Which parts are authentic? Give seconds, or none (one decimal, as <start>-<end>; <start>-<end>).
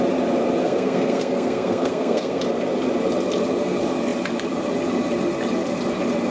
0.0-0.6; 2.4-6.3